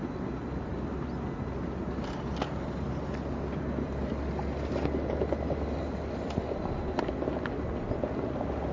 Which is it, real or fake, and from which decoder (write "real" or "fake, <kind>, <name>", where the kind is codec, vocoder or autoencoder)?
real